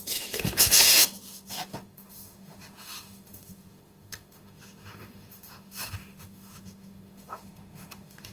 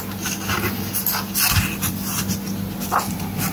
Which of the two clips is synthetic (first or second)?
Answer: first